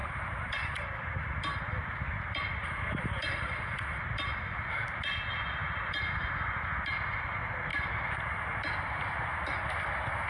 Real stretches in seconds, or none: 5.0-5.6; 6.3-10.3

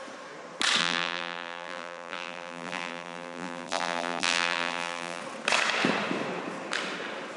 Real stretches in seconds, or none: 0.0-0.8; 5.2-7.4

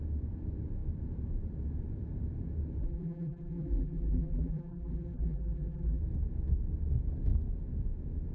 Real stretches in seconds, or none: 0.0-2.8; 6.0-8.3

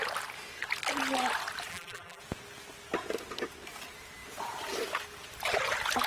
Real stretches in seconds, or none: 0.0-1.7; 2.2-6.1